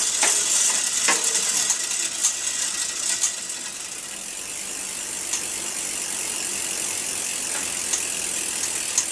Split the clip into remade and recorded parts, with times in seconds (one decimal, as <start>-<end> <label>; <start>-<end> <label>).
0.0-9.1 recorded